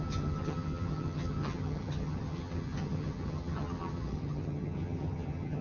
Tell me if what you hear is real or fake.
fake